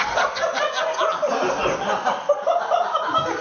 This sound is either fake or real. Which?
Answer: real